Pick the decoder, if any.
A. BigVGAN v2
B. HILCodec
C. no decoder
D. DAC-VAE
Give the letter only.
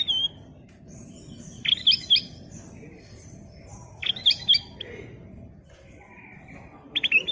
C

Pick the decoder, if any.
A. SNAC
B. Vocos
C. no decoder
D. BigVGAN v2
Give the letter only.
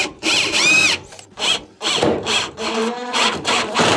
D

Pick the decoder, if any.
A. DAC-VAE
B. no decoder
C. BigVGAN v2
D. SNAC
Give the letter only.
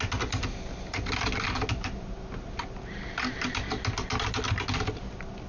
B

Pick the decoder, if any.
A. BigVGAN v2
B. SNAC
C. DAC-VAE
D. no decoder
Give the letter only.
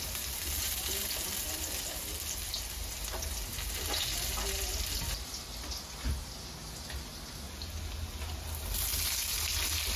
D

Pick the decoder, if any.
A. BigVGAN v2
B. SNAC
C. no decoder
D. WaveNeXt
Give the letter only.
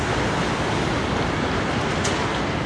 C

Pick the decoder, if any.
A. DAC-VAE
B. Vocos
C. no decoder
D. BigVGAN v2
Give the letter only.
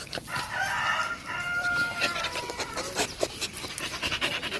D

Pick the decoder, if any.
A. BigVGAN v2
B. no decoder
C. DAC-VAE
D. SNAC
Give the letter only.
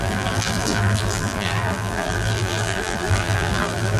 A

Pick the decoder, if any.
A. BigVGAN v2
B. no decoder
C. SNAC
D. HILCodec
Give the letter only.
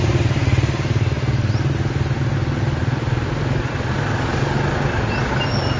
B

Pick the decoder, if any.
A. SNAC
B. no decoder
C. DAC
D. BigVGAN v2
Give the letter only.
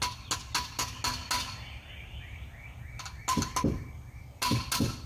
B